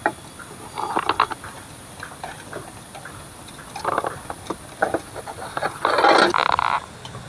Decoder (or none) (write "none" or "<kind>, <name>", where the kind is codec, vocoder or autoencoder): none